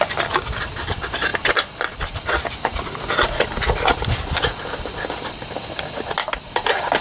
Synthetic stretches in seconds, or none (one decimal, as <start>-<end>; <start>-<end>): none